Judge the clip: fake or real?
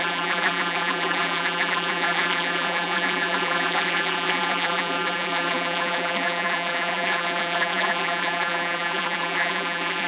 fake